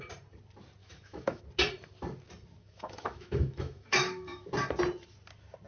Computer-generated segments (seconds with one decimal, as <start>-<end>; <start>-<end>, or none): 0.8-1.4; 2.6-4.5